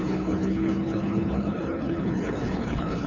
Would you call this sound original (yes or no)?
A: no